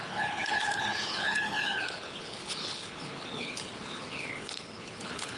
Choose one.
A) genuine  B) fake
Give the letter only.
B